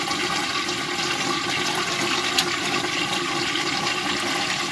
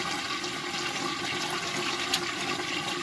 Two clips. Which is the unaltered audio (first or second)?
second